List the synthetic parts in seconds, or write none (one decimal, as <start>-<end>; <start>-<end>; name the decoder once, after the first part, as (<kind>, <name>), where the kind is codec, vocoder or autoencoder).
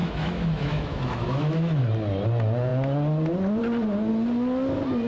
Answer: 0.0-1.8 (autoencoder, DAC-VAE)